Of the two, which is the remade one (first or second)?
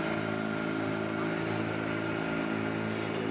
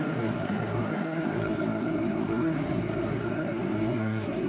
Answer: second